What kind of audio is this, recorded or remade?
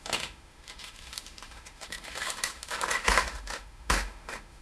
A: remade